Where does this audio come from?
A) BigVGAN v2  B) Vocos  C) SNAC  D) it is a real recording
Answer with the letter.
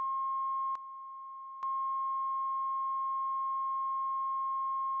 D